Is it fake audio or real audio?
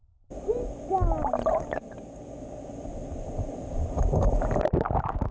real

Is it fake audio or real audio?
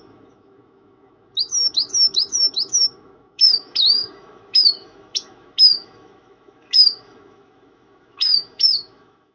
fake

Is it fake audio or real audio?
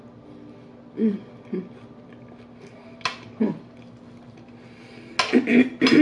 real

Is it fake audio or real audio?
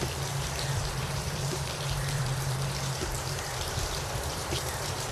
fake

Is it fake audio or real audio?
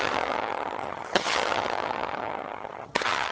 fake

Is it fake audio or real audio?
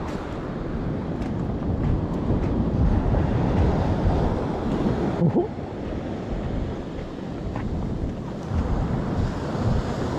real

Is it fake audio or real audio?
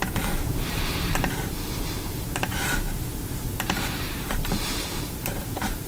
fake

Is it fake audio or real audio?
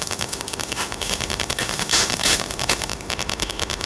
fake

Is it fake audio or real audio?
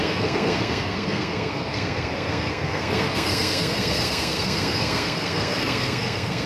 fake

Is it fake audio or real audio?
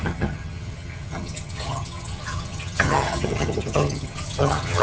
fake